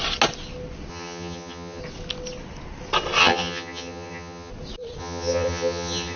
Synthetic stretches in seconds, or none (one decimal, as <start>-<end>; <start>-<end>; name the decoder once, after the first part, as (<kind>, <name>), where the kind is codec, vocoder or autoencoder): 0.9-1.8 (vocoder, HiFi-GAN); 3.2-4.5; 5.0-6.2